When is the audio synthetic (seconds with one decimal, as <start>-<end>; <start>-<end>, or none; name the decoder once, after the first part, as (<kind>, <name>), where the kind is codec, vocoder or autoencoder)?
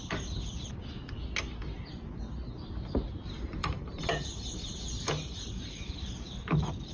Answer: 3.6-5.1 (vocoder, BigVGAN v2)